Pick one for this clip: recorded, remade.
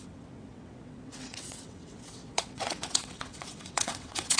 remade